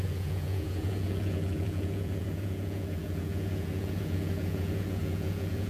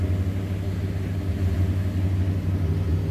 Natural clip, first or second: second